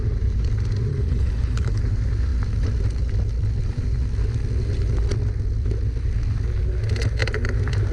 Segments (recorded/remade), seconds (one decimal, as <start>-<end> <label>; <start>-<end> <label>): 0.0-0.9 recorded; 0.9-1.8 remade; 1.8-7.9 recorded